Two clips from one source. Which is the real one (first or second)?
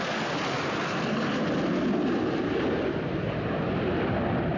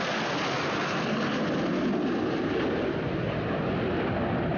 second